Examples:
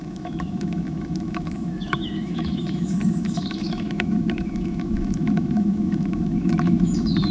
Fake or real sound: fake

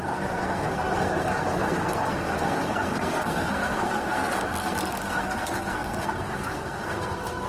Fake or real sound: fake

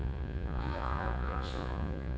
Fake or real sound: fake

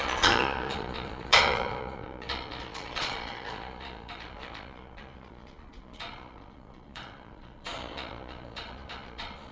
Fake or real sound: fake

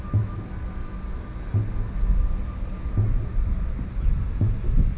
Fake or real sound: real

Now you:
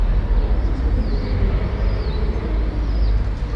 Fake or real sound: real